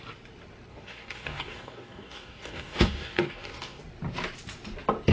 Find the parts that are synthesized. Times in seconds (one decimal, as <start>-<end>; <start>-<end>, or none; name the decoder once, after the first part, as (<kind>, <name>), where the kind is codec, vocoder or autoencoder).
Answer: 0.7-3.8 (codec, DAC)